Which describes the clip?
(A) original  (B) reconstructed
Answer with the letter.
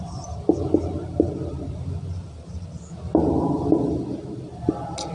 A